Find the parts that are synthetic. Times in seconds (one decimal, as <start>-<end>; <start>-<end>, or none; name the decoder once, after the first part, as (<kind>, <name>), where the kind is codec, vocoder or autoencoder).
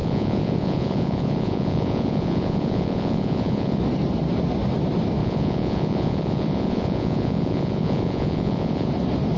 0.0-3.8 (vocoder, Vocos); 5.2-8.9